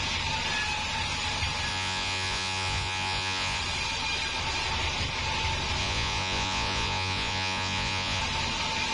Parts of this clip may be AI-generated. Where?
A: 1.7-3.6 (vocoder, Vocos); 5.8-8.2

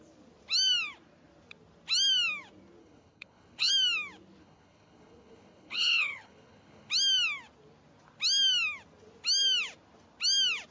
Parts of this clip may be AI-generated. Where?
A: 2.8-3.7 (codec, HILCodec); 4.4-6.9

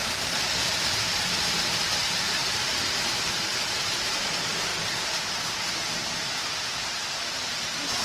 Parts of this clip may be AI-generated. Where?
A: 0.0-4.7 (vocoder, BigVGAN v2); 5.7-7.0